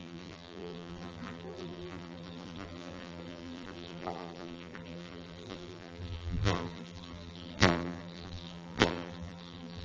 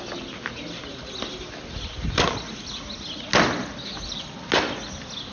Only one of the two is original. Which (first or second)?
second